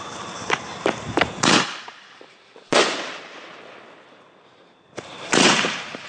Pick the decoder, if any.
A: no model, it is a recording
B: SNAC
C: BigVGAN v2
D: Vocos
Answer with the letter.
C